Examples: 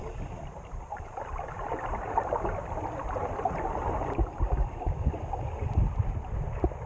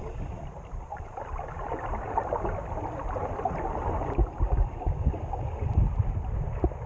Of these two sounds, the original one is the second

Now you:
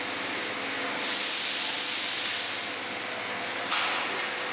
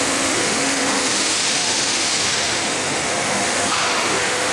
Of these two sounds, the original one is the first